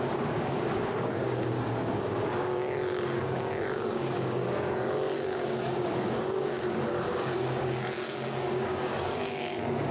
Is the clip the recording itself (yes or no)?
no